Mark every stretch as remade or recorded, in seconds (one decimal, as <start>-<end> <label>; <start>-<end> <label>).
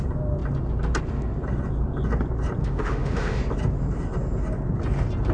0.0-2.6 recorded; 2.6-3.4 remade; 3.4-5.3 recorded